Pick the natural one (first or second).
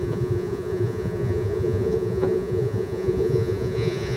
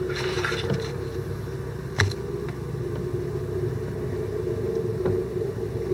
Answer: second